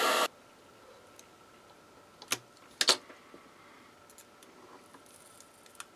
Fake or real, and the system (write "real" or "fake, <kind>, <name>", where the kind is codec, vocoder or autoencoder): real